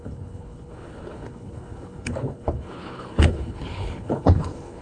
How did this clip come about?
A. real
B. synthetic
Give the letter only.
B